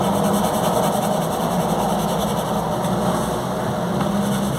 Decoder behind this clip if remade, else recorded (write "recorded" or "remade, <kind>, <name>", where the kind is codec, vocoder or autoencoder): recorded